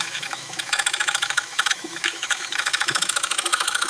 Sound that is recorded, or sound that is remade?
remade